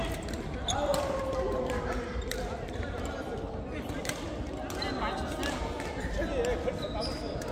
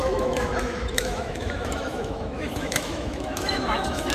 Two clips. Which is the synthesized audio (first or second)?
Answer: second